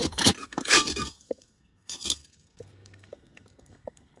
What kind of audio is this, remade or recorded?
remade